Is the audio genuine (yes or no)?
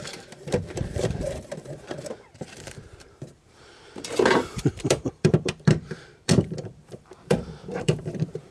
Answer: no